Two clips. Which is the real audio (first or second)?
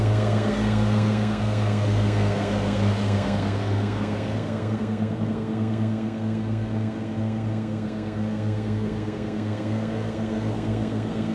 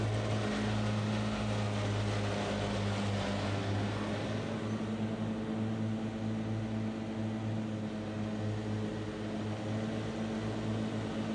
second